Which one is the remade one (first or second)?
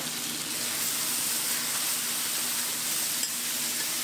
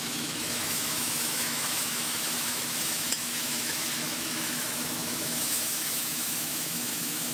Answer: second